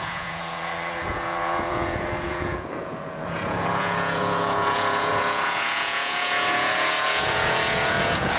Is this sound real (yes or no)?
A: no